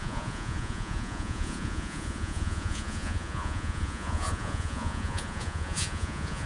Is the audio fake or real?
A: fake